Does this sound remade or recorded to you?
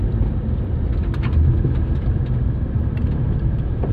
recorded